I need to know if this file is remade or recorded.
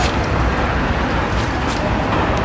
recorded